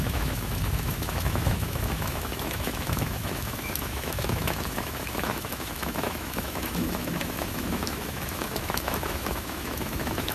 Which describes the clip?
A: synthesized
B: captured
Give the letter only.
A